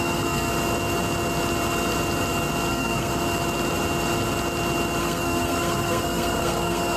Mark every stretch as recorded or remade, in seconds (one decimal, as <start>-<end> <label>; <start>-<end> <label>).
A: 0.0-0.5 remade; 0.5-2.7 recorded; 2.7-3.1 remade; 3.1-5.0 recorded; 5.0-7.0 remade